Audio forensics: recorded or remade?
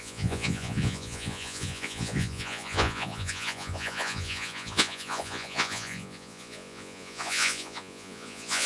remade